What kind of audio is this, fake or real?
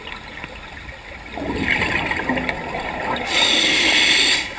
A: real